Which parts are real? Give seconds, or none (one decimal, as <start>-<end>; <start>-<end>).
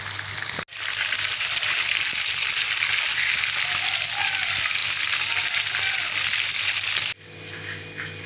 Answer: 0.0-8.3